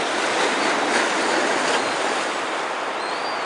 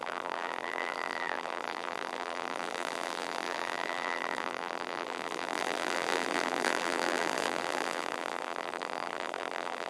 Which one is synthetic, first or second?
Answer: second